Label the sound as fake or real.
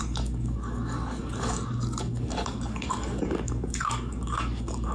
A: fake